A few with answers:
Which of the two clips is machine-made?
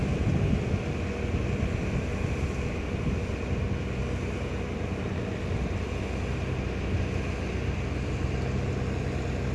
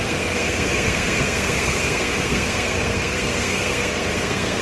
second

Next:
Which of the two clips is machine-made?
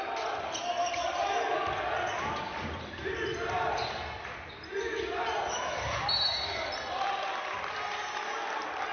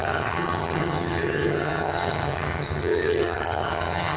second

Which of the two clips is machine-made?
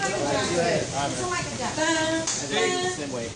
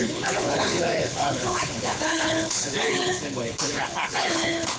second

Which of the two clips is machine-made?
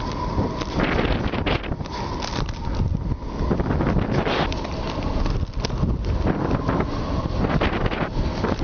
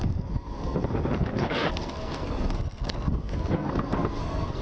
second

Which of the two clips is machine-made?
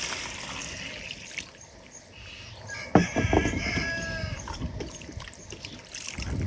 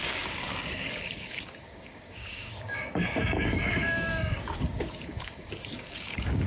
second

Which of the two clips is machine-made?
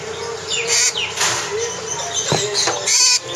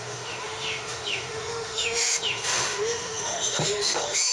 second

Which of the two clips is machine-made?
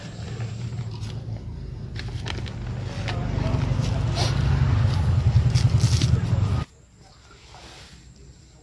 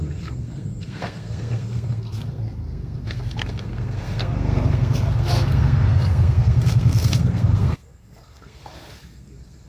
second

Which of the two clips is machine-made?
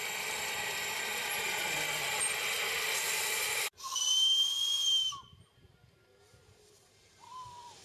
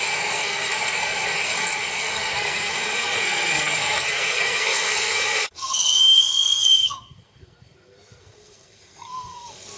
second